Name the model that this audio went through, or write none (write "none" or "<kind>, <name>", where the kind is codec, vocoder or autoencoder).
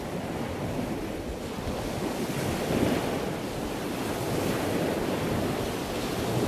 none